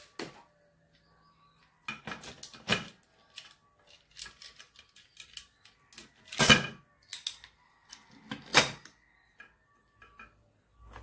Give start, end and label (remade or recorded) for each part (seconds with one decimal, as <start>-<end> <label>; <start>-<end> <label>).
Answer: 0.0-11.0 recorded